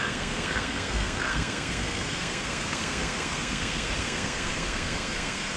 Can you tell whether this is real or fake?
fake